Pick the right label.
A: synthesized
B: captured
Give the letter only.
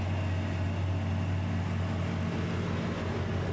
B